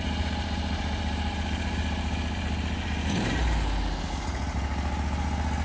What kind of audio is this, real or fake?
real